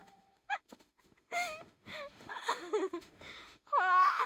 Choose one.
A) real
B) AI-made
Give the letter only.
B